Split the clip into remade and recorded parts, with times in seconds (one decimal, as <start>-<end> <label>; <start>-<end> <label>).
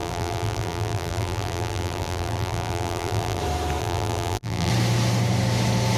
0.0-3.4 remade; 3.4-3.8 recorded; 3.8-4.7 remade; 4.7-6.0 recorded